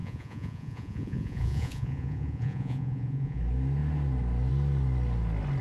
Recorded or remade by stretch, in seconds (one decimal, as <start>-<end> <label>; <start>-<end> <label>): 0.0-3.4 remade; 3.4-5.6 recorded